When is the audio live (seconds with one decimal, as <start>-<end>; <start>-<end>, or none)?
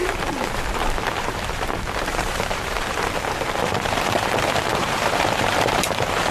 none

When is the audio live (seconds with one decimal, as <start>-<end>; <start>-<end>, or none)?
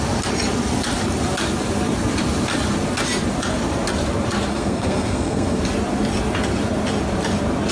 0.0-4.5; 5.6-7.7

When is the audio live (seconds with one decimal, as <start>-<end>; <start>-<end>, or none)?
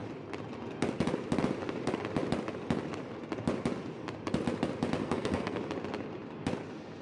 0.0-5.0; 5.6-7.0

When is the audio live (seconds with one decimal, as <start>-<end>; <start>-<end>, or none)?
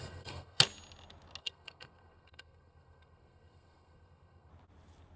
0.6-1.4; 4.5-5.2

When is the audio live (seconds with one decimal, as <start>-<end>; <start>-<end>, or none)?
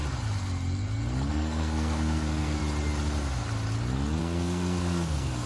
0.0-1.3; 2.6-4.2